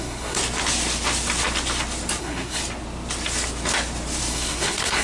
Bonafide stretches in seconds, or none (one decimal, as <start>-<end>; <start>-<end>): 0.4-2.2; 2.6-4.3